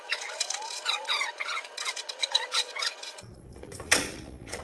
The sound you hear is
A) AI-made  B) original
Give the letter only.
A